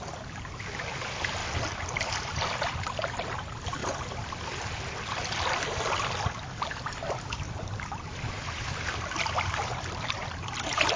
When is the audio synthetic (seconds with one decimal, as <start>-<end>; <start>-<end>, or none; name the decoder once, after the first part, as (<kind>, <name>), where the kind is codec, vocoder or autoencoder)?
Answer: none